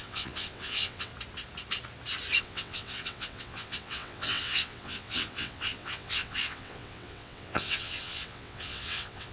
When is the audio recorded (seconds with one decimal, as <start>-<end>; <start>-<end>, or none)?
1.1-2.4